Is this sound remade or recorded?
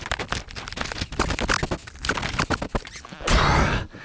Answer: recorded